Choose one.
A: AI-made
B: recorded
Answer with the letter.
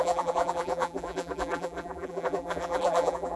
A